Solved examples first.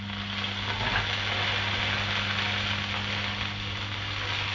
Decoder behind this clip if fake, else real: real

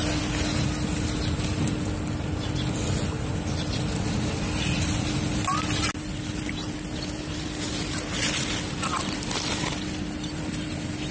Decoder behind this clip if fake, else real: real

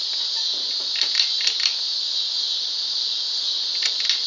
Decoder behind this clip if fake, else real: real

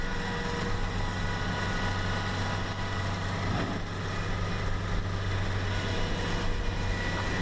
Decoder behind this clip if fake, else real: real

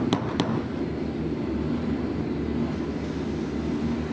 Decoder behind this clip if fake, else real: real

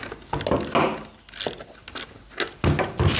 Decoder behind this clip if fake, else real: real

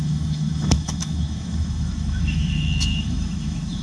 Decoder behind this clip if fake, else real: fake, autoencoder, DAC-VAE